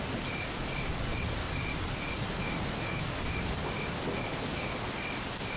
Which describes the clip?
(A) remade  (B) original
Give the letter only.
B